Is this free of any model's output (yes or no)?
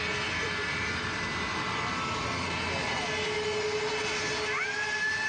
yes